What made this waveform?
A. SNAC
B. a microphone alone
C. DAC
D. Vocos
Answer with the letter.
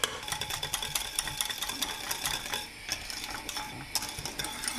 B